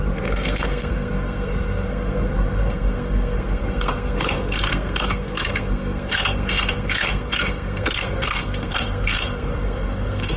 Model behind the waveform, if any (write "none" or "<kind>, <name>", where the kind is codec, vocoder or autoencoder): codec, SNAC